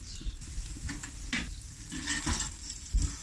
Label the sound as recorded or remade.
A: recorded